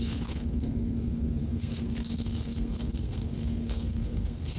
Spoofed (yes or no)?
yes